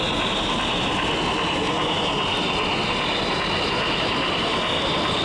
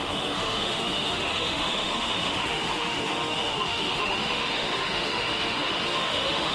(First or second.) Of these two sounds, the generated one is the second